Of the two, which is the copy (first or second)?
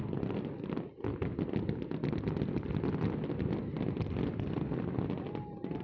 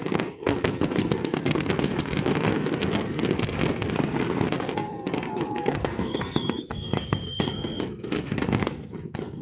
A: second